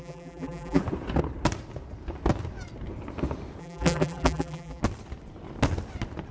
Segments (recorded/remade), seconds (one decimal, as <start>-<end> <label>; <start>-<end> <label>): 0.0-0.8 remade; 0.8-3.6 recorded; 3.6-4.8 remade; 4.8-6.3 recorded